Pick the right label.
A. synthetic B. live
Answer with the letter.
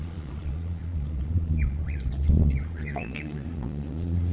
A